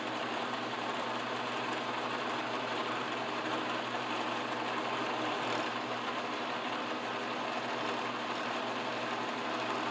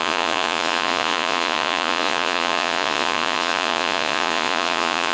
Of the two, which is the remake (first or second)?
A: second